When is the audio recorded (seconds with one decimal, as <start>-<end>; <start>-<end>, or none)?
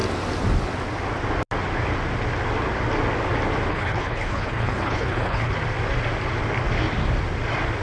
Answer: 0.0-3.7; 5.5-7.8